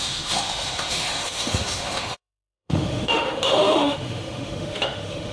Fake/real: fake